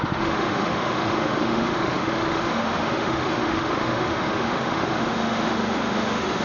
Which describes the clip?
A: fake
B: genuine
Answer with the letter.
A